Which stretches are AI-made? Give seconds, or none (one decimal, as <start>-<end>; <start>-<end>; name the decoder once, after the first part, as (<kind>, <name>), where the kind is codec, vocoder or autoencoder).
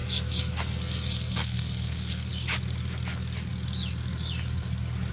0.0-2.3 (codec, SNAC)